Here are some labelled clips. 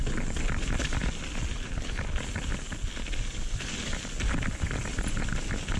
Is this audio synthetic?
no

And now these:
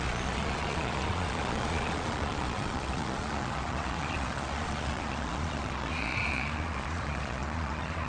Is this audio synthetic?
yes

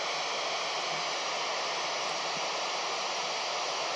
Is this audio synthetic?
no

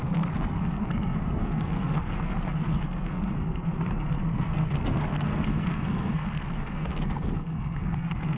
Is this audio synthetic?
yes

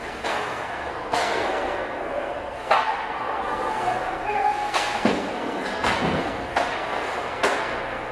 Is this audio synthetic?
yes